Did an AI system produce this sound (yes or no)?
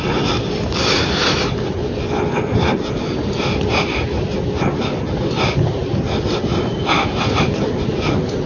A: no